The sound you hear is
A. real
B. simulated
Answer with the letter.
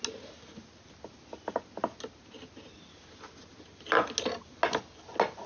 A